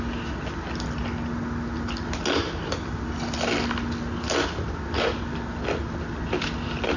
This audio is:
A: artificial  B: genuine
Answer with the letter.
B